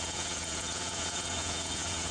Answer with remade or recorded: remade